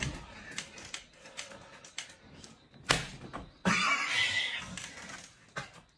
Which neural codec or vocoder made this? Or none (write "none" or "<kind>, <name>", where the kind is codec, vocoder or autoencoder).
none